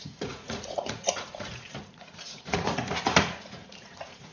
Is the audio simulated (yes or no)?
yes